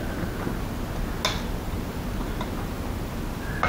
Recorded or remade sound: recorded